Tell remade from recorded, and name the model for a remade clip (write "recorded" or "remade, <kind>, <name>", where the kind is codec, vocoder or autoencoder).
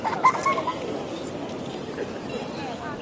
recorded